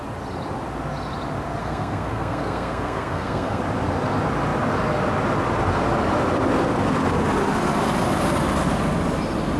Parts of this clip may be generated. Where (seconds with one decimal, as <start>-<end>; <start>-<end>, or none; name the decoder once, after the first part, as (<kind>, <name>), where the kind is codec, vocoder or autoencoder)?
1.6-3.6 (codec, SNAC)